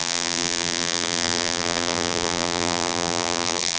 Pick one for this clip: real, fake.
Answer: fake